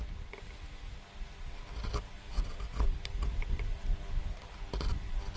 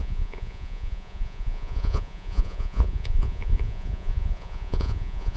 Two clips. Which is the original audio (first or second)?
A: first